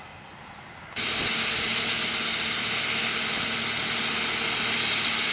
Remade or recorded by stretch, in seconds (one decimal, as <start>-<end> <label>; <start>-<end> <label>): 0.0-5.3 recorded